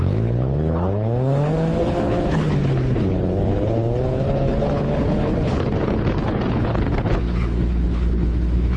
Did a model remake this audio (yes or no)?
yes